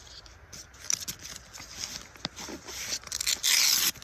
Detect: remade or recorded recorded